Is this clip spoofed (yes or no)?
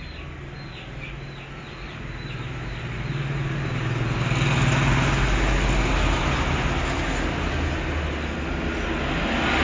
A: no